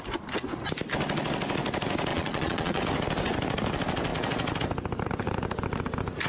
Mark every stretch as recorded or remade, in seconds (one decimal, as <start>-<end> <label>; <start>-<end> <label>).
0.0-2.1 recorded; 2.1-2.8 remade; 2.8-6.3 recorded